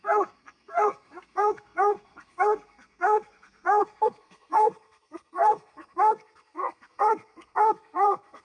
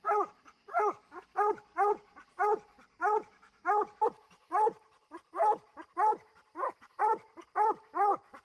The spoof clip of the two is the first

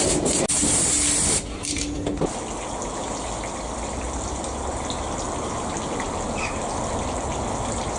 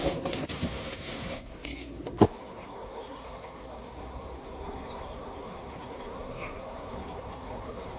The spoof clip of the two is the second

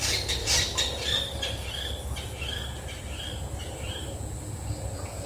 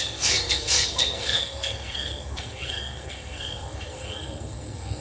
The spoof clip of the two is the second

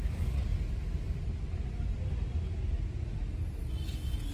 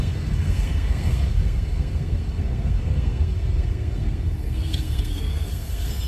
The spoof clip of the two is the second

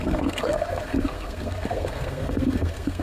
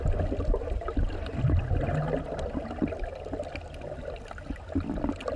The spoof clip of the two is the first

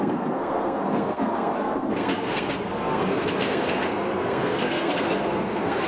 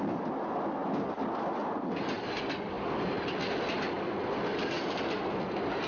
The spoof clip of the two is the first